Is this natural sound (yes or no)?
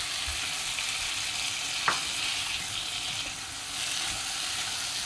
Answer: yes